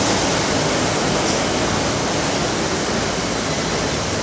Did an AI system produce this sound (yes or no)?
no